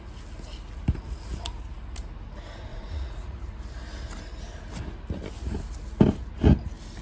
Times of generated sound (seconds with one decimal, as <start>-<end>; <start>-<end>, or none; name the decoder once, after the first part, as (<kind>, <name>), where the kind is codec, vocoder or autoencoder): 2.7-3.4 (vocoder, Vocos)